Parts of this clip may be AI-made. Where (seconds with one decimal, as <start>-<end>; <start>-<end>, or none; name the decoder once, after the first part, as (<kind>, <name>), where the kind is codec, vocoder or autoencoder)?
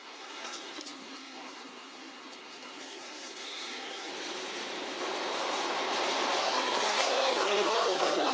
0.0-4.1 (codec, SNAC); 6.4-8.3